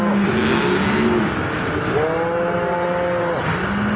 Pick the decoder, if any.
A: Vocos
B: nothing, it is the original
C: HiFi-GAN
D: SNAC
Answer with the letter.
B